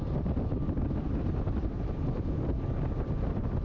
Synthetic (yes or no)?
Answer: yes